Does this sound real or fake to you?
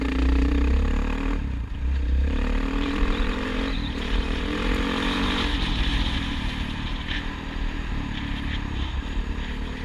fake